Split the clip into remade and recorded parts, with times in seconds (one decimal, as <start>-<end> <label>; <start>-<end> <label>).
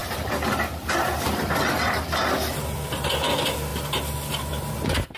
0.0-3.7 remade; 3.7-4.5 recorded; 4.5-5.2 remade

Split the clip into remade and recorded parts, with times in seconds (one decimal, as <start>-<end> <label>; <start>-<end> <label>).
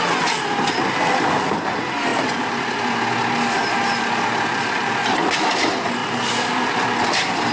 0.0-7.5 remade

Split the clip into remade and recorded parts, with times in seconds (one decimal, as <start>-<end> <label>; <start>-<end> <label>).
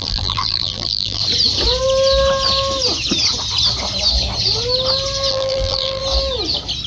0.0-1.2 remade; 1.2-5.3 recorded; 5.3-6.0 remade; 6.0-6.9 recorded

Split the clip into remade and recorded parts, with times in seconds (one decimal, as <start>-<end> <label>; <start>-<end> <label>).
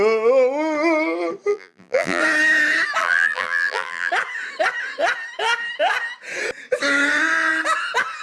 0.0-1.5 recorded; 1.5-2.2 remade; 2.2-3.0 recorded; 3.0-4.1 remade; 4.1-8.2 recorded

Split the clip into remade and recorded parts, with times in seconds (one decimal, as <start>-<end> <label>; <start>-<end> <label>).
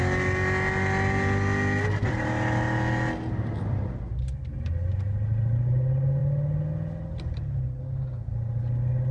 0.0-9.1 recorded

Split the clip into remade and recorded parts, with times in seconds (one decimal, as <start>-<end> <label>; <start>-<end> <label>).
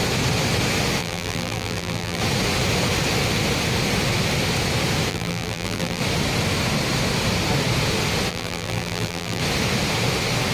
0.0-1.0 recorded; 1.0-2.2 remade; 2.2-5.1 recorded; 5.1-6.0 remade; 6.0-8.3 recorded; 8.3-9.4 remade; 9.4-10.5 recorded